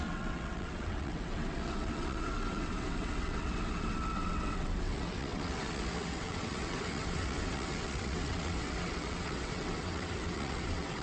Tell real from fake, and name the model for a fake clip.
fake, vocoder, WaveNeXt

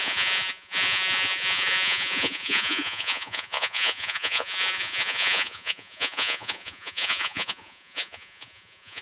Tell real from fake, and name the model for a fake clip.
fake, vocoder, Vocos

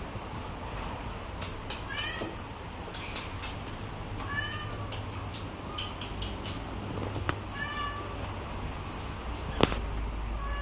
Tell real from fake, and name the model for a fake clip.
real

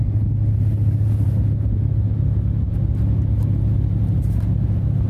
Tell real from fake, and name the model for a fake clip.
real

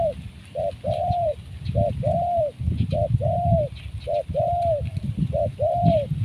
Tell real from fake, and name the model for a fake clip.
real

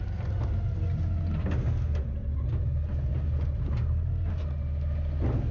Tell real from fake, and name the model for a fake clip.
real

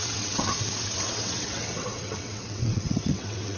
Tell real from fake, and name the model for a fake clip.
fake, vocoder, WaveNeXt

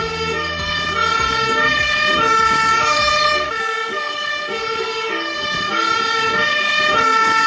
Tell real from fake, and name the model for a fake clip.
fake, codec, DAC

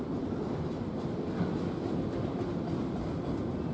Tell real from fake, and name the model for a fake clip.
fake, vocoder, BigVGAN v2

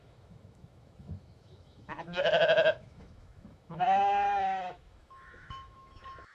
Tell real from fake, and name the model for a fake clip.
fake, autoencoder, DAC-VAE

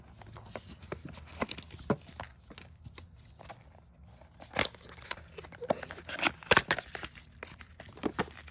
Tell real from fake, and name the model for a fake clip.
real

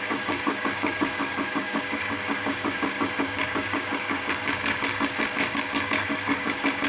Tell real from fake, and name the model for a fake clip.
fake, codec, DAC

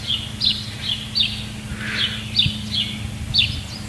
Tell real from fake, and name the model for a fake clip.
real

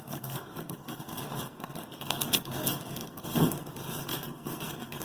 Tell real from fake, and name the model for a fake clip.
fake, codec, SNAC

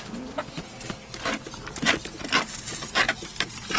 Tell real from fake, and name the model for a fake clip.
real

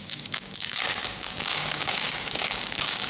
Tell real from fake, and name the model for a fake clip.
fake, codec, DAC